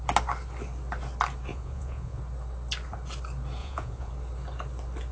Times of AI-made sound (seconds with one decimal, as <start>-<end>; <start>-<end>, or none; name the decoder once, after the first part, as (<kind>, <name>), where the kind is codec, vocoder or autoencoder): 1.5-2.2 (vocoder, Vocos); 3.6-4.1